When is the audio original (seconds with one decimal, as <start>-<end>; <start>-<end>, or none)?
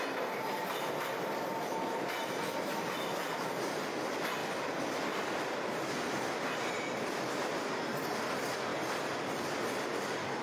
0.0-10.4